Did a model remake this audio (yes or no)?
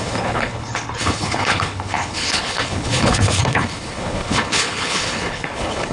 yes